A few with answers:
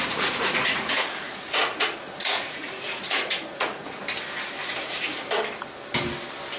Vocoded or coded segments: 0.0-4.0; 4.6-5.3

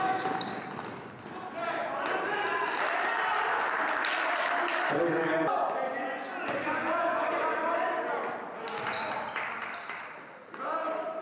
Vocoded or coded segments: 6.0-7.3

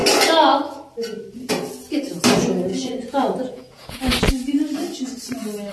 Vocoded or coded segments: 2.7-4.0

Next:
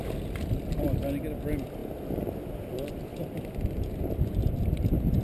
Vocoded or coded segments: none